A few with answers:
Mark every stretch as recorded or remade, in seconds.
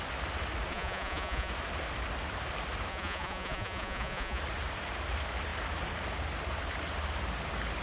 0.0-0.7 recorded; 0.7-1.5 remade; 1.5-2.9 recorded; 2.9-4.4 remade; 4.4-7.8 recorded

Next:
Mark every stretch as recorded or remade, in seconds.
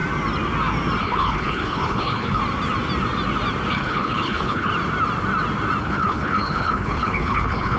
0.0-1.0 recorded; 1.0-2.4 remade; 2.4-3.7 recorded; 3.7-4.7 remade; 4.7-5.8 recorded; 5.8-7.8 remade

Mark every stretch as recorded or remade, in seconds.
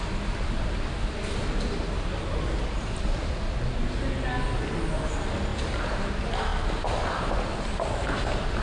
0.0-5.5 recorded; 5.5-6.1 remade; 6.1-6.5 recorded; 6.5-8.2 remade; 8.2-8.6 recorded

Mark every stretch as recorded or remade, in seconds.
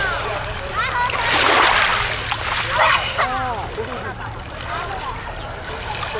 0.0-6.2 recorded